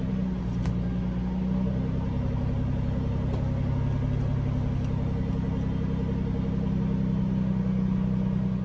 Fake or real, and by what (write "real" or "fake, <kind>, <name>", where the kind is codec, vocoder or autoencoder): real